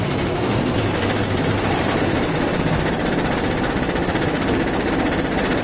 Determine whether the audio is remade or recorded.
remade